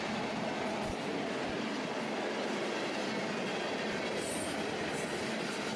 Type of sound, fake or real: real